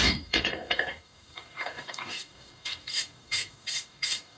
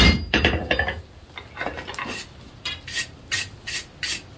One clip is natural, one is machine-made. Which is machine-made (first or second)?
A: first